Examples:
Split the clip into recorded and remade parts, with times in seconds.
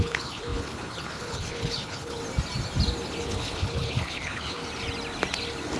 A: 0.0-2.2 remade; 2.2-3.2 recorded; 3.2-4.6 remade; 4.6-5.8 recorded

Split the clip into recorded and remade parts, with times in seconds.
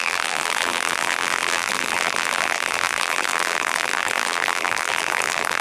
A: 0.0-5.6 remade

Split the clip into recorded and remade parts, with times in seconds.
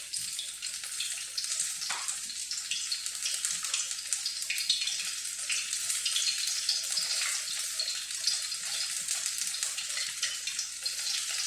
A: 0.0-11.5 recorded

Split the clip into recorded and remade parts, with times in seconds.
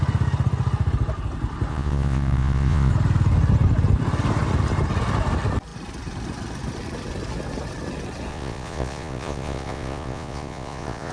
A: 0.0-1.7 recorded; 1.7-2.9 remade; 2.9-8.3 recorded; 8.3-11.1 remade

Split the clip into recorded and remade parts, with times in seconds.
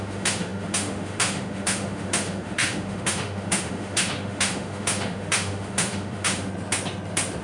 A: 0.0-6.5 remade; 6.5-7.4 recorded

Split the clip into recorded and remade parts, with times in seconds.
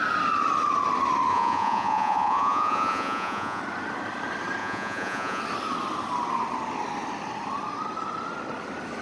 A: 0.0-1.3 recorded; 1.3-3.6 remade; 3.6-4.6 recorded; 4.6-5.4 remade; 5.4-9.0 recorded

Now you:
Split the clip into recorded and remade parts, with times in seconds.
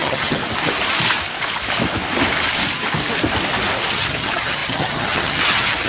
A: 0.0-0.4 remade; 0.4-3.9 recorded; 3.9-5.9 remade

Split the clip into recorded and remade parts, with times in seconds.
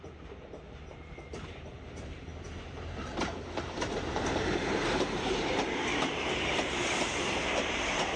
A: 0.0-8.2 remade